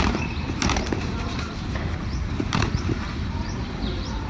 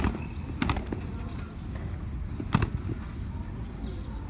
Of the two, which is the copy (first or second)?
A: first